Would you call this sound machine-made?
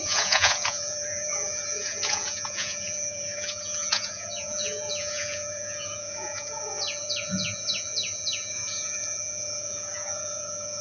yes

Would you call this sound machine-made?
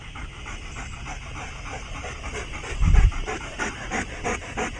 no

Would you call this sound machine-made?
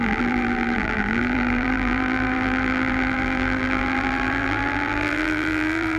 yes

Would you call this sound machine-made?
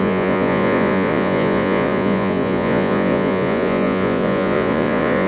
yes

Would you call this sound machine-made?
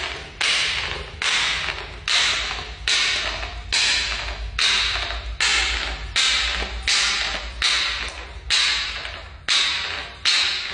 no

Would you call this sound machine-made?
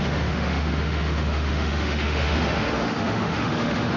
yes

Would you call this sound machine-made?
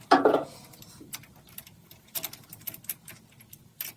no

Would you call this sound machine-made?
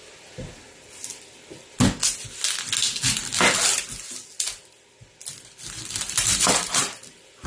no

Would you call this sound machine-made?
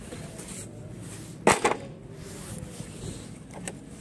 no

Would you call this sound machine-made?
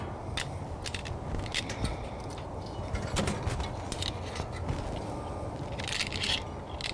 no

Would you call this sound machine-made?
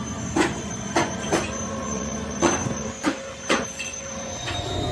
yes